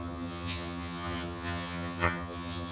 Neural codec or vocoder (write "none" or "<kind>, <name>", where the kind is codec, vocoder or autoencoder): vocoder, HiFi-GAN